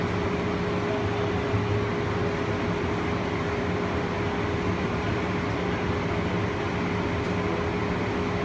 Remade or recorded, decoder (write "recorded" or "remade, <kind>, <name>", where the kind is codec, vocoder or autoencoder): recorded